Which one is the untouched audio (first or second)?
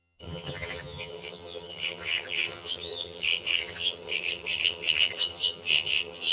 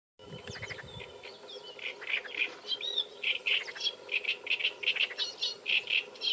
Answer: second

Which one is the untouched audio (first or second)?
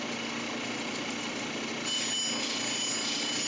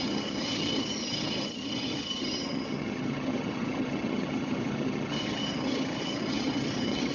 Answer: first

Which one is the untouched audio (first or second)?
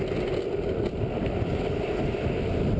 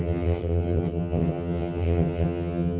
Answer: first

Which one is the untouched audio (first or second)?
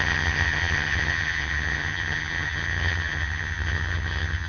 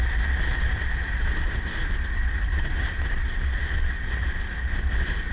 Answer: second